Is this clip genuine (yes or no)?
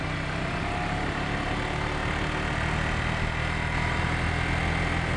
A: yes